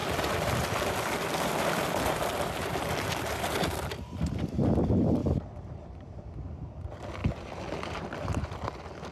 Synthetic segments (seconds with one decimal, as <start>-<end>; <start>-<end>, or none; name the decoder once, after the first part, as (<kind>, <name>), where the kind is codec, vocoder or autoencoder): 0.0-2.4 (vocoder, BigVGAN v2); 5.2-6.2; 7.2-8.3